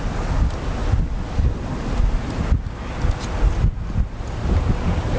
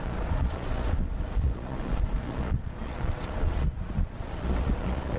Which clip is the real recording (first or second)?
first